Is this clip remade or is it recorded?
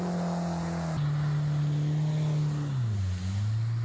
recorded